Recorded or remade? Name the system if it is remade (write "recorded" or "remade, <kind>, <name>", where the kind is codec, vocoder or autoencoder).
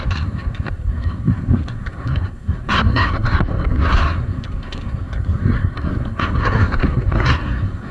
remade, codec, SNAC